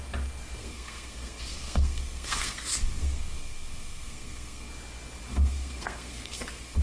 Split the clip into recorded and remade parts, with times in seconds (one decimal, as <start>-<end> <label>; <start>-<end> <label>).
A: 0.0-0.6 recorded; 0.6-4.7 remade; 4.7-5.3 recorded; 5.3-6.8 remade